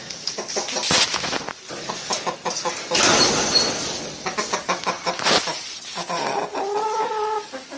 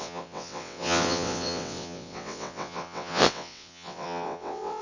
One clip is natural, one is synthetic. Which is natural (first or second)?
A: first